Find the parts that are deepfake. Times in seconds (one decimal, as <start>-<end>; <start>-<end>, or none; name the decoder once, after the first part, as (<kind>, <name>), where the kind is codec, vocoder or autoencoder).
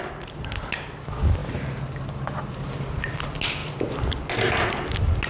none